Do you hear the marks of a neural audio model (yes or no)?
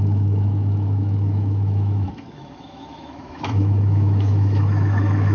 yes